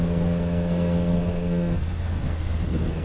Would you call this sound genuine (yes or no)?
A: no